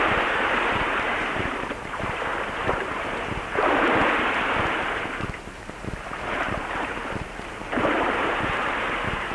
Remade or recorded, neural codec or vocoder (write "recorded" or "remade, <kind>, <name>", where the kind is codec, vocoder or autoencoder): remade, vocoder, BigVGAN v2